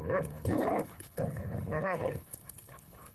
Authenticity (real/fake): fake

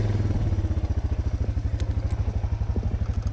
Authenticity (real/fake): real